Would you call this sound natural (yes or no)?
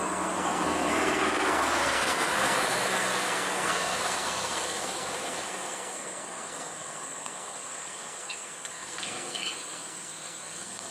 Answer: no